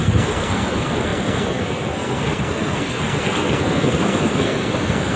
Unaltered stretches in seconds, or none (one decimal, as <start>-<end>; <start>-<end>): none